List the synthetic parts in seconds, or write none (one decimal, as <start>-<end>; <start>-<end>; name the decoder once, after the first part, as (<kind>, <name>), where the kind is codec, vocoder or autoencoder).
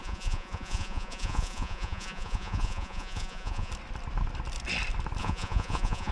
0.0-3.7 (vocoder, Vocos); 5.2-6.1